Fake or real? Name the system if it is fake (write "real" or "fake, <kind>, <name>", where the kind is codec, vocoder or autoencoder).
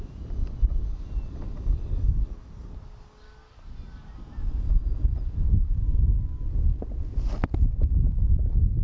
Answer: real